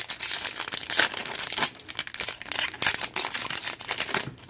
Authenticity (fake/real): real